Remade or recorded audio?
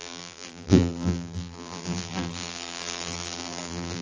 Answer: remade